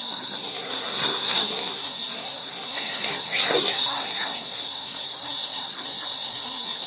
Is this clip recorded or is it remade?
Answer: remade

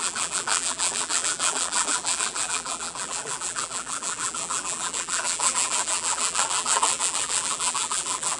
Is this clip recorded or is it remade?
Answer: remade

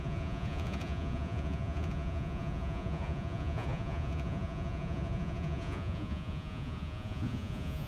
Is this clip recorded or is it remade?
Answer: remade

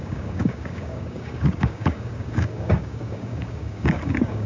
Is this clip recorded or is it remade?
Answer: remade